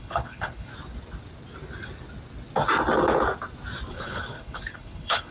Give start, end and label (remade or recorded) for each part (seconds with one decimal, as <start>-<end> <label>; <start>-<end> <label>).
0.0-0.7 remade; 0.7-3.9 recorded; 3.9-5.3 remade